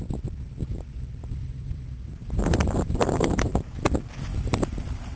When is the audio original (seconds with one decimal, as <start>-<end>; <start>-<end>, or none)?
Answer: 0.0-1.2; 3.5-5.2